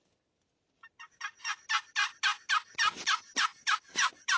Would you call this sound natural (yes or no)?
yes